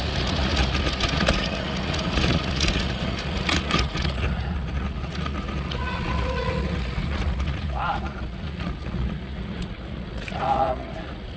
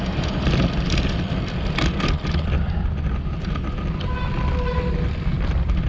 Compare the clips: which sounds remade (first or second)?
first